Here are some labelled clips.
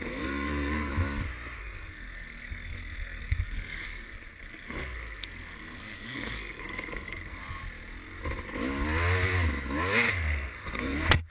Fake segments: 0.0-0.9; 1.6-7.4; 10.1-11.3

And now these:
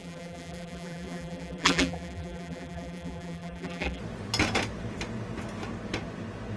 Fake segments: 0.0-4.0

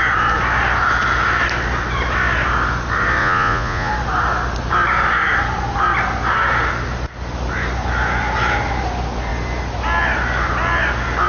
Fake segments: 3.2-3.9

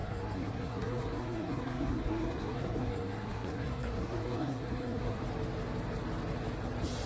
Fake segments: 0.0-5.2

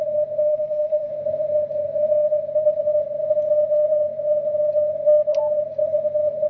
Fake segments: 0.5-1.1

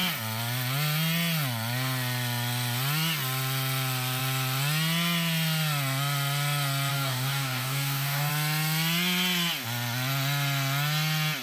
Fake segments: 6.9-8.3

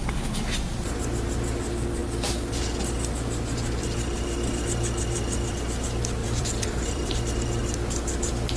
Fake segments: 6.2-7.1